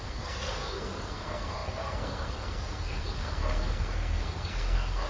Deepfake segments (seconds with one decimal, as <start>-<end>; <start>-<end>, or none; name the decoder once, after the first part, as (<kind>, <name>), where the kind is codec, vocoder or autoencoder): 0.0-5.1 (codec, SNAC)